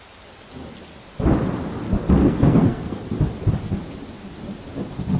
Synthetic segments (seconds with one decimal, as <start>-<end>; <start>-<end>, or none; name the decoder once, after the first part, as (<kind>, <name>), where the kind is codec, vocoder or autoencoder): 2.2-3.0 (codec, SNAC)